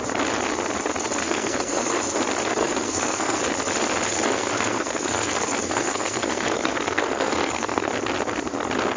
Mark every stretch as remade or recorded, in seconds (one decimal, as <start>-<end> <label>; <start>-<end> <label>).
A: 0.0-1.2 recorded; 1.2-2.0 remade; 2.0-2.6 recorded; 2.6-3.4 remade; 3.4-4.1 recorded; 4.1-7.9 remade; 7.9-9.0 recorded